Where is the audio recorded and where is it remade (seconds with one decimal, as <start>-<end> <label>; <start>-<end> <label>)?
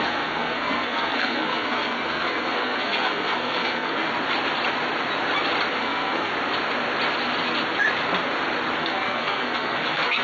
0.0-4.1 remade; 4.1-5.8 recorded; 5.8-6.3 remade; 6.3-8.8 recorded; 8.8-10.2 remade